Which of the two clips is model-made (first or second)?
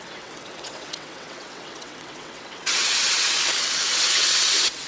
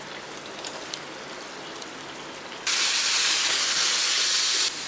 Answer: first